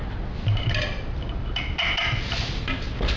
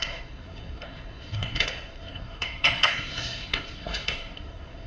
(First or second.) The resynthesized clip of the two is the second